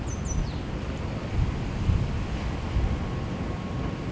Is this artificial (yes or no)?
no